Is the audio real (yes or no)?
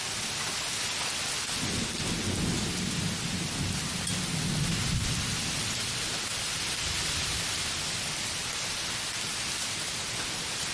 yes